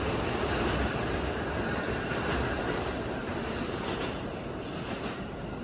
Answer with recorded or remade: recorded